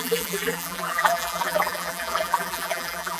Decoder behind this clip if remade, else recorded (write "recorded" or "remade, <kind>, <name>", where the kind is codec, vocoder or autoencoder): remade, vocoder, BigVGAN v2